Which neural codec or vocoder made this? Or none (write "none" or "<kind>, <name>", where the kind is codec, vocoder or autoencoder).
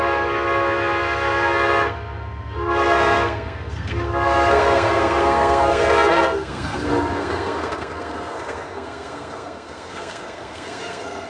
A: codec, SNAC